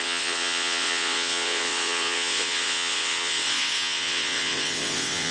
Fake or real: fake